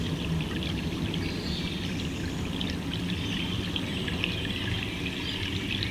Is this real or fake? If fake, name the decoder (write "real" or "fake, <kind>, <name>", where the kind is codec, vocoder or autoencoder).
real